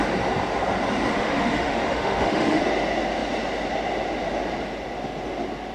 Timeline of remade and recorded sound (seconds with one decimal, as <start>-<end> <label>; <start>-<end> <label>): 0.0-1.1 recorded; 1.1-2.6 remade; 2.6-5.7 recorded

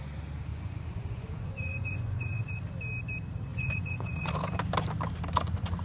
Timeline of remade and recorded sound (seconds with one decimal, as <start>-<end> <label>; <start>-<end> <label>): 0.0-0.5 recorded; 0.5-2.6 remade; 2.6-3.5 recorded; 3.5-4.3 remade; 4.3-5.8 recorded

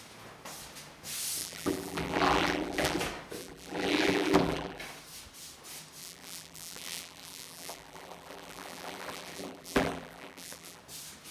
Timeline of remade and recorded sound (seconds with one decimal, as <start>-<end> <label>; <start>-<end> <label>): 0.0-1.4 recorded; 1.4-3.0 remade; 3.0-3.4 recorded; 3.4-4.8 remade; 4.8-6.0 recorded; 6.0-10.8 remade; 10.8-11.3 recorded